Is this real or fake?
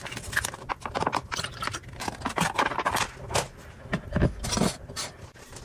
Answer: real